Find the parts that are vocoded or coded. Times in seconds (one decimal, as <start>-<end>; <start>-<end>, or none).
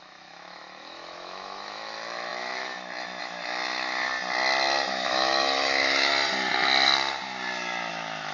0.0-4.1; 4.9-6.1; 7.9-8.3